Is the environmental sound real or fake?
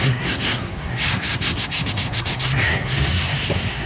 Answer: fake